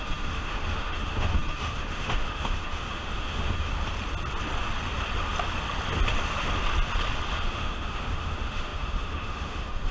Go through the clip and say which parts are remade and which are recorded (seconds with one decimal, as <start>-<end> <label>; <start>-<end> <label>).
0.0-3.7 remade; 3.7-7.4 recorded; 7.4-9.9 remade